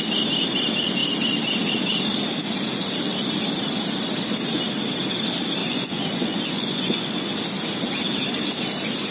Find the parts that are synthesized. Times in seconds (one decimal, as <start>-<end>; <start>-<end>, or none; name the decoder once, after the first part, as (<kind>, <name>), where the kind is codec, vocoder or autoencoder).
5.6-7.3 (vocoder, Vocos)

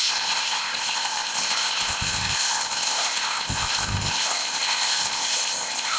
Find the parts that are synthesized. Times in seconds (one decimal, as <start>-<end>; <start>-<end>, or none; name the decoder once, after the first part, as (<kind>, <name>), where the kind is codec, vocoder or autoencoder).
0.0-6.0 (codec, ZipCodec)